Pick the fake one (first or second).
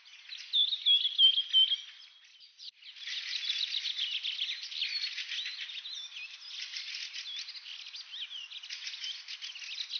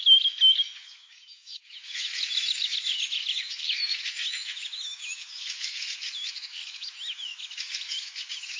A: second